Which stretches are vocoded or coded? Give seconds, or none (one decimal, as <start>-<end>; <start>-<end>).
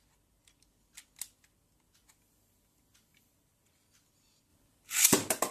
none